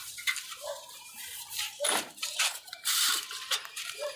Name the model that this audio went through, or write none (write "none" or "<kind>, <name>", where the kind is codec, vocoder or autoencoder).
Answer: vocoder, BigVGAN v2